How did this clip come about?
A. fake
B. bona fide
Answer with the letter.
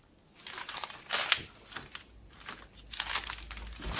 B